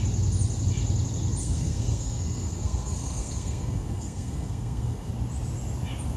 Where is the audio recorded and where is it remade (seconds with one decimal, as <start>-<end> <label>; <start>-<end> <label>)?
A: 0.0-1.4 recorded; 1.4-5.1 remade; 5.1-6.2 recorded